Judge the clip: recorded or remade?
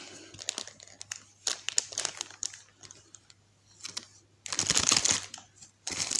recorded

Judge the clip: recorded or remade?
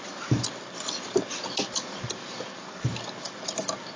recorded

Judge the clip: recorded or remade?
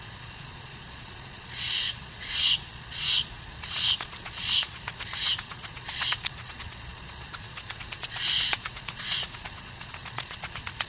remade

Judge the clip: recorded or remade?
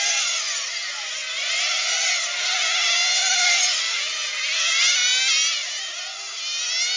recorded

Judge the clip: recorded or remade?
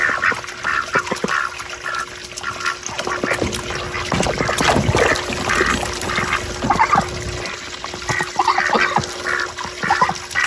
recorded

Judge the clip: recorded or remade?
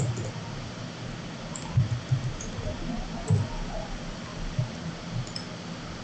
recorded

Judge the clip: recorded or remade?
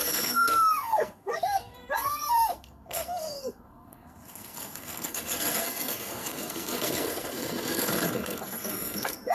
remade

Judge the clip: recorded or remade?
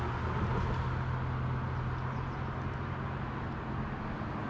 recorded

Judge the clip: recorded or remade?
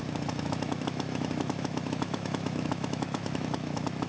remade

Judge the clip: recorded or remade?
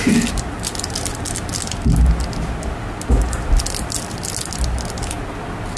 recorded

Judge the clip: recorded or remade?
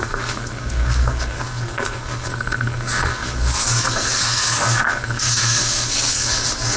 remade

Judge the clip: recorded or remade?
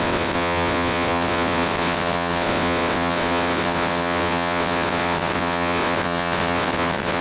remade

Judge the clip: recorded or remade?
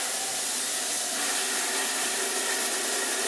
recorded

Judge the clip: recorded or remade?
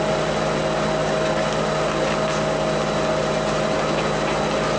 recorded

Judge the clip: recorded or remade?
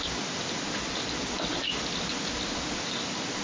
recorded